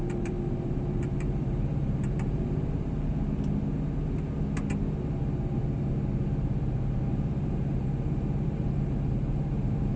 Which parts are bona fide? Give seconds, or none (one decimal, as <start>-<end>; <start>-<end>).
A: 3.1-7.1